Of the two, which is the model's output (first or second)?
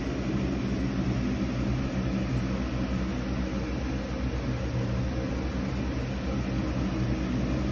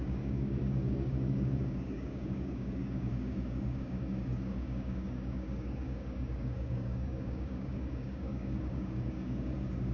second